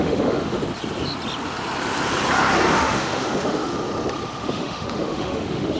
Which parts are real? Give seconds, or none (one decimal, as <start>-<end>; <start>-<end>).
0.6-2.7; 3.7-4.4